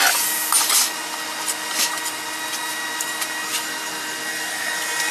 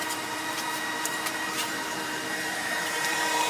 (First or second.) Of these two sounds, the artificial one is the second